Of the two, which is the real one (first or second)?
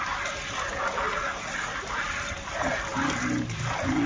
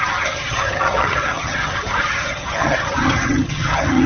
first